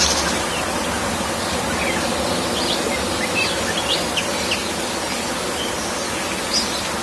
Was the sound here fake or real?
real